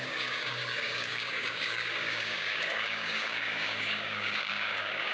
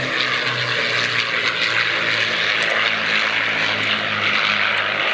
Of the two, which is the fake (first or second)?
first